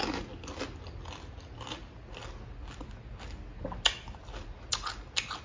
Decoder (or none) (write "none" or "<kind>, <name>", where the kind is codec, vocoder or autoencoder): none